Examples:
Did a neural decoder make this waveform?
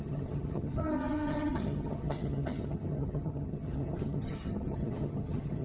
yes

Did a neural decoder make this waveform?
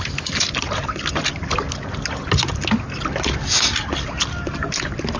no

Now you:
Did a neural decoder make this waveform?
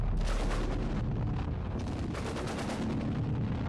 no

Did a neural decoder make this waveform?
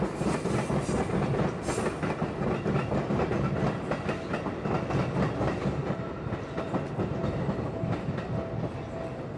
no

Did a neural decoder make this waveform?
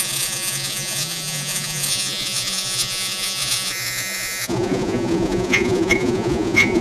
yes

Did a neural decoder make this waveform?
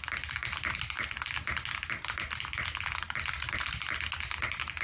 no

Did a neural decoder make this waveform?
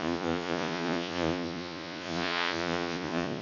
yes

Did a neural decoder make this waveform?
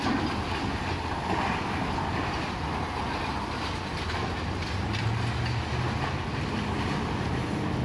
no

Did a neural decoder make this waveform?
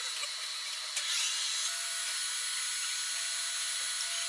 no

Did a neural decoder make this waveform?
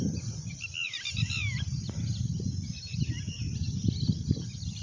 no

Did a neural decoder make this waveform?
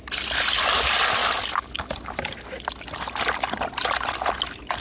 no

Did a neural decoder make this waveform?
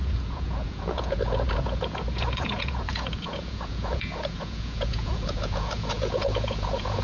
yes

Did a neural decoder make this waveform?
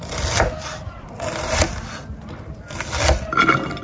no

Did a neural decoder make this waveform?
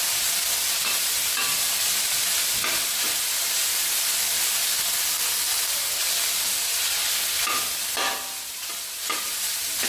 no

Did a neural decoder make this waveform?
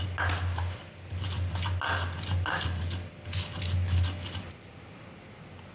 no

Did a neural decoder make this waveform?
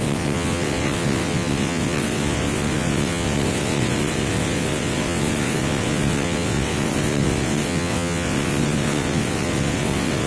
yes